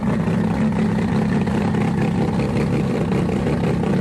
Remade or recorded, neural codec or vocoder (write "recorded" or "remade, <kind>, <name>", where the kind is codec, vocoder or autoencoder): recorded